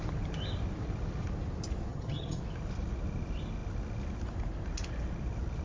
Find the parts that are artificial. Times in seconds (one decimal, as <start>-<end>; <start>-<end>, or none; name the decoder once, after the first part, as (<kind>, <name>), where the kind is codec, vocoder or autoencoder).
1.9-2.4 (vocoder, HiFi-GAN)